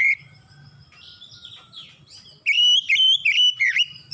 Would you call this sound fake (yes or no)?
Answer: yes